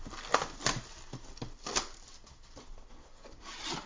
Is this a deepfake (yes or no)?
no